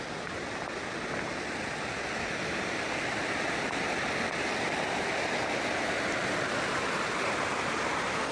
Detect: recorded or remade recorded